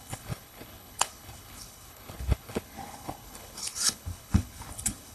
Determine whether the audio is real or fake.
fake